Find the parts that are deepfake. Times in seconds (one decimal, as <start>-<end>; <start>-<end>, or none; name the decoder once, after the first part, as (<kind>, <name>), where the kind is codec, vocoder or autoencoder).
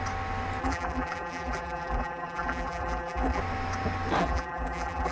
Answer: 0.6-3.4 (vocoder, BigVGAN v2); 4.2-5.1